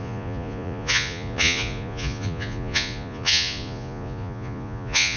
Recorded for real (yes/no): no